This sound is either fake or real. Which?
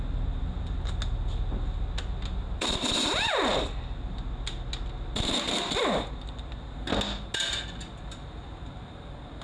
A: real